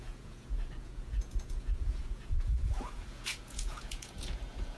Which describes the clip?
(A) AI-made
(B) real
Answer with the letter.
A